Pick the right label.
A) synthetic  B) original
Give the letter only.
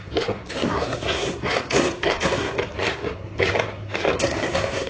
A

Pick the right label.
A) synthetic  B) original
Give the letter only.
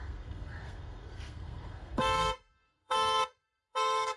A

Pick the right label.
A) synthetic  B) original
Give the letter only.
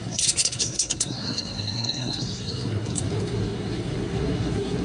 A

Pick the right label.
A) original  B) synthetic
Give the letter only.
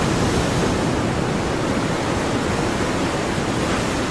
A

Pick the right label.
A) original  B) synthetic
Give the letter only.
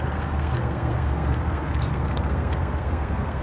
B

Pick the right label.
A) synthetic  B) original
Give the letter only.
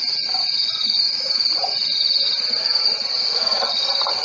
B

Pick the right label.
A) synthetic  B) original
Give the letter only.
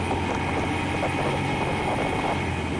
B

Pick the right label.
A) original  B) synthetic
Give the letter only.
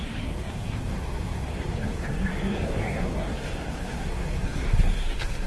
B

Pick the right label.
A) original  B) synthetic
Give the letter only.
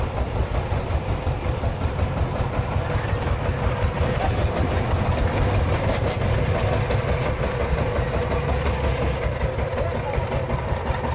A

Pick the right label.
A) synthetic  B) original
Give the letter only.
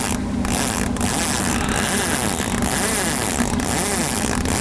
B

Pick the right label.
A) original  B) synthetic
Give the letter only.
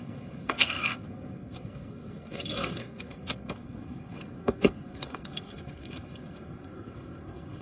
B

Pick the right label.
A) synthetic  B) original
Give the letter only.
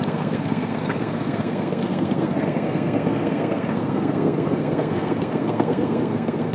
A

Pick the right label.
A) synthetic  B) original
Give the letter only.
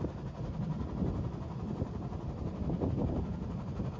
B